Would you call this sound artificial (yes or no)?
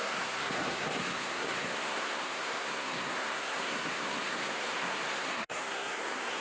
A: yes